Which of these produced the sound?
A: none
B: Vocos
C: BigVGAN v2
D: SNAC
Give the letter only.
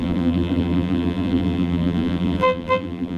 C